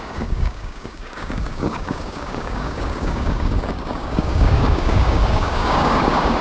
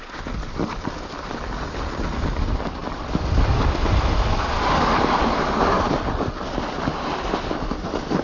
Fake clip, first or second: first